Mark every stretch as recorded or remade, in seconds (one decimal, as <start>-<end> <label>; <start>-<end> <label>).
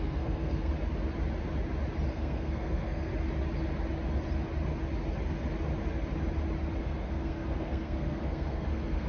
0.0-0.7 remade; 0.7-2.1 recorded; 2.1-3.1 remade; 3.1-6.8 recorded; 6.8-9.1 remade